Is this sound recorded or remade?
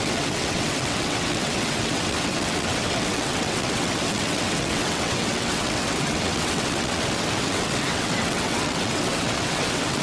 remade